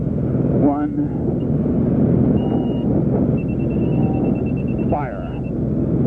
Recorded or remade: recorded